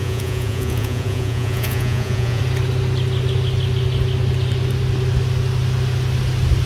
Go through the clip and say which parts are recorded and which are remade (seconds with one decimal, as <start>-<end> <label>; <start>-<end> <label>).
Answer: 0.0-2.4 remade; 2.4-6.7 recorded

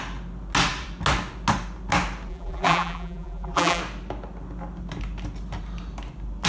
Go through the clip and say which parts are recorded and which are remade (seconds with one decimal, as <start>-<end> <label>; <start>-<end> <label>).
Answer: 0.0-2.3 recorded; 2.3-3.8 remade; 3.8-6.5 recorded

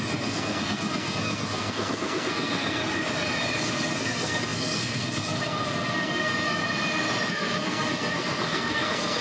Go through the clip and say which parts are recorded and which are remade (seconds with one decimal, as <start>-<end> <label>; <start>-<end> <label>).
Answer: 0.0-2.8 remade; 2.8-3.7 recorded; 3.7-6.6 remade; 6.6-7.3 recorded; 7.3-9.2 remade

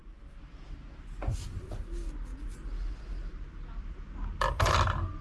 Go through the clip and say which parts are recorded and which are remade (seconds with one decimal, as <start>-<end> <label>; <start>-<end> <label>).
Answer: 0.0-5.2 recorded

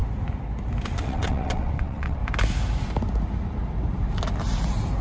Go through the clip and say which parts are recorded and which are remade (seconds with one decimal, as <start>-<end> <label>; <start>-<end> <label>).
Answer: 0.0-1.0 recorded; 1.0-2.2 remade; 2.2-5.0 recorded